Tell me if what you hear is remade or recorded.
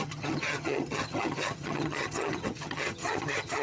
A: remade